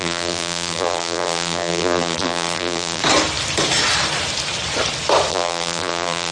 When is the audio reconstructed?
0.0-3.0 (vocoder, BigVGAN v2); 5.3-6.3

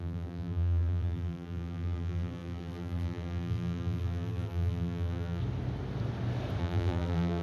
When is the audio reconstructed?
0.0-5.4 (vocoder, BigVGAN v2); 6.6-7.4

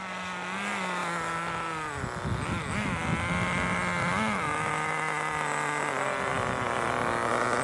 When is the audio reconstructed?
6.3-7.0 (vocoder, BigVGAN v2)

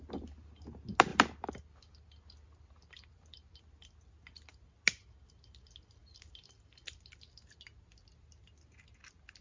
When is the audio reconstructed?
1.1-3.6 (vocoder, BigVGAN v2)

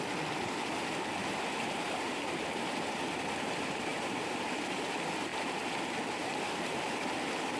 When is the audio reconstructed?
1.2-2.2 (vocoder, BigVGAN v2); 3.9-4.6